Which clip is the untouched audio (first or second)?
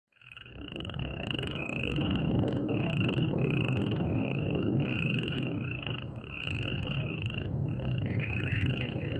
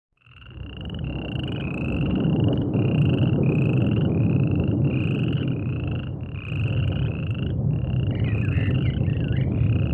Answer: second